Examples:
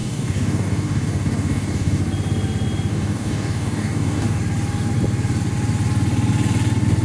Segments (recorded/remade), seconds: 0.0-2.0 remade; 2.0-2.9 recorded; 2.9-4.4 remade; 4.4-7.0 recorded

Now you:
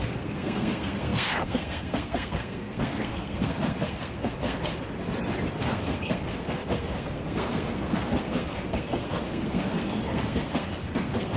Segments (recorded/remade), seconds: 0.0-4.7 remade; 4.7-5.6 recorded; 5.6-11.4 remade

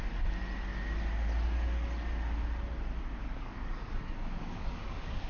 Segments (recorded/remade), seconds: 0.0-3.2 recorded; 3.2-5.3 remade